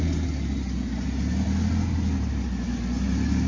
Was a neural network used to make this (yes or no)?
no